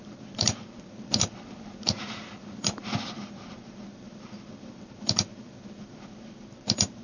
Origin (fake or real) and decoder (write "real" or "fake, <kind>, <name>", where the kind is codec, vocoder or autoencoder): fake, vocoder, BigVGAN v2